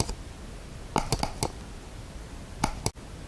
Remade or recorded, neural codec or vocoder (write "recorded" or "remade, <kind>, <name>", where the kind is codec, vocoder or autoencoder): recorded